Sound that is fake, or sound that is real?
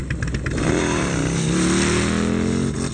real